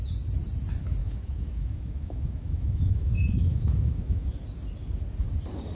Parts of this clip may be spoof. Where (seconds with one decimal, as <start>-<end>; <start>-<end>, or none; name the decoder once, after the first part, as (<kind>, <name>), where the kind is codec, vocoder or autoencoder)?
1.0-4.4 (autoencoder, DAC-VAE)